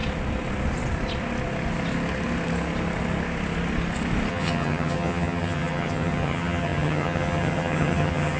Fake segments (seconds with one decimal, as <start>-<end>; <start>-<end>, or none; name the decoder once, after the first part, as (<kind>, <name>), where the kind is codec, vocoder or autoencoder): 4.3-8.4 (vocoder, HiFi-GAN)